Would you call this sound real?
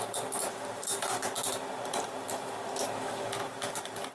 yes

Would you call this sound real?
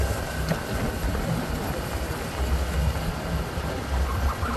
yes